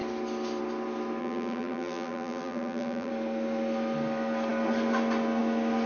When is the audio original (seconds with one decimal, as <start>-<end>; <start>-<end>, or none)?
0.0-1.2; 3.1-5.9